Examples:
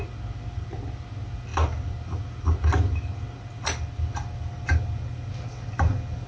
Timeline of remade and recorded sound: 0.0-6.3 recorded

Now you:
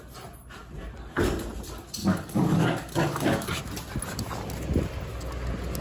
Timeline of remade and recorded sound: 0.0-2.0 recorded; 2.0-3.6 remade; 3.6-5.8 recorded

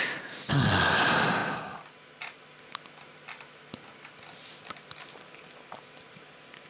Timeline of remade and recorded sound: 0.0-6.7 recorded

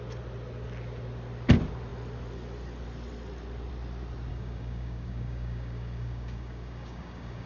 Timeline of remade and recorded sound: 0.0-4.3 recorded; 4.3-7.5 remade

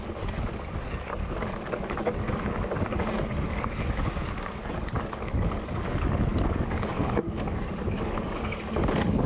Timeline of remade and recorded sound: 0.0-9.3 remade

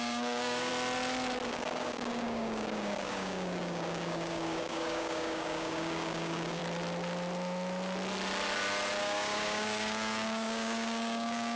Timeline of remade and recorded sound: 0.0-0.7 remade; 0.7-1.5 recorded; 1.5-6.6 remade; 6.6-9.0 recorded; 9.0-11.6 remade

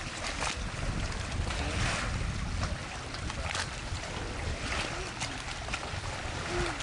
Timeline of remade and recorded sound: 0.0-6.8 recorded

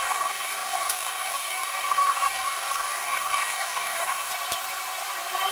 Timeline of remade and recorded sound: 0.0-4.3 remade; 4.3-5.5 recorded